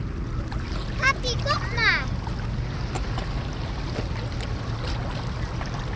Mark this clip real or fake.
real